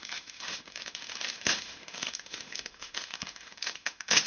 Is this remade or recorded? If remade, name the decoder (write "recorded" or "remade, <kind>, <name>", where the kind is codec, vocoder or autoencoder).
remade, autoencoder, DAC-VAE